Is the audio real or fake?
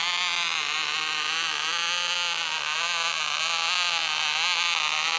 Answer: real